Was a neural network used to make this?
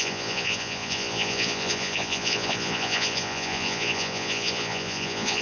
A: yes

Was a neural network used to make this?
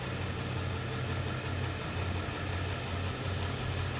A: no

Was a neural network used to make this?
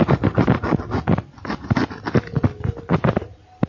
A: no